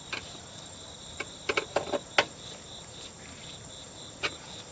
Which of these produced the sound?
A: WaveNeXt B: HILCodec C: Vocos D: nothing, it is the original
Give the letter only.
D